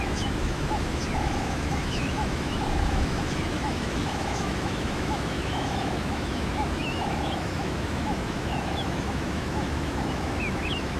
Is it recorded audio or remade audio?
remade